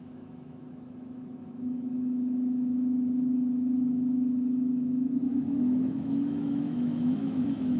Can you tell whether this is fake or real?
fake